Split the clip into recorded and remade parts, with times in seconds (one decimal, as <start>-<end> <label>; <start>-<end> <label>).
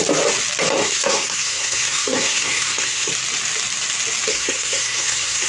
0.0-0.8 recorded; 0.8-3.1 remade; 3.1-4.3 recorded; 4.3-5.5 remade